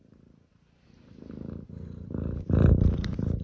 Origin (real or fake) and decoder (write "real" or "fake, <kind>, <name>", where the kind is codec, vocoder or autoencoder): fake, vocoder, BigVGAN v2